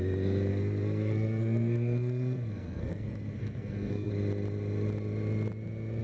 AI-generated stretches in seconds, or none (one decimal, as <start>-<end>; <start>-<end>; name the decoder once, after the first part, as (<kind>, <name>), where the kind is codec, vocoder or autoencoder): 0.5-4.1 (codec, SNAC)